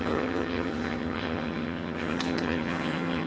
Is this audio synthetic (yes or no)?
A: yes